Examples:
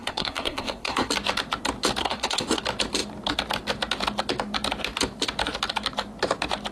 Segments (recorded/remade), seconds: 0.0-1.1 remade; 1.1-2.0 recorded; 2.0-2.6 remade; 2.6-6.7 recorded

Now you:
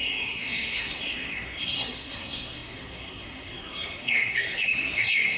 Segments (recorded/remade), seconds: 0.0-5.4 remade

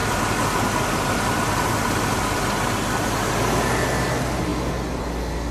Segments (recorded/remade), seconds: 0.0-5.5 recorded

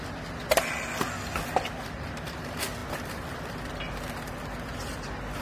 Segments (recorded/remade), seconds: 0.0-5.4 recorded

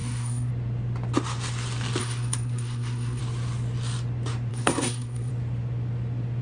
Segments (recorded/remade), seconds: 0.0-0.5 remade; 0.5-2.0 recorded; 2.0-3.2 remade; 3.2-4.5 recorded; 4.5-5.3 remade; 5.3-6.4 recorded

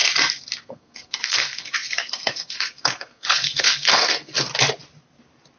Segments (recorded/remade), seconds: 0.0-0.6 recorded; 0.6-4.5 remade; 4.5-5.6 recorded

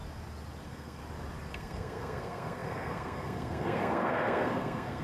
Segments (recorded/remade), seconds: 0.0-0.6 recorded; 0.6-1.0 remade; 1.0-1.5 recorded; 1.5-5.0 remade